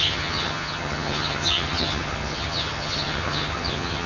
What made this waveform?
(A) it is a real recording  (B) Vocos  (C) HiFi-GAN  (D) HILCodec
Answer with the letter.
C